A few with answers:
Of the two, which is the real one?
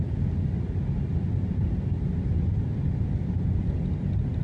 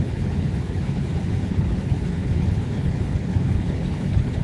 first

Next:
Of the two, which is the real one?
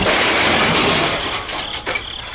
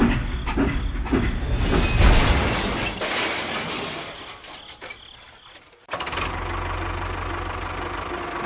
second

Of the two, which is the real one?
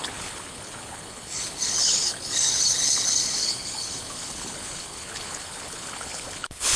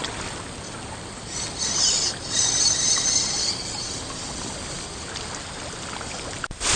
second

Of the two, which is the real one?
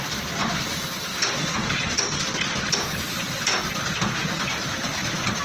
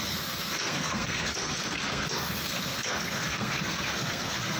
first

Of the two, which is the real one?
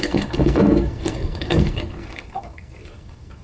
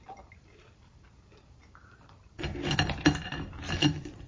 second